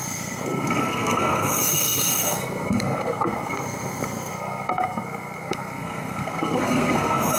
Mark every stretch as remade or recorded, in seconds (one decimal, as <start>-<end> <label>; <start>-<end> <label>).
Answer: 0.0-7.4 remade